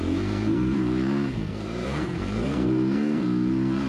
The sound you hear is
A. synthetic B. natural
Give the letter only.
A